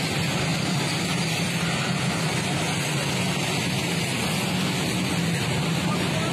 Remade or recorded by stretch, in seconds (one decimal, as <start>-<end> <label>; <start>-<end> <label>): 0.0-6.3 recorded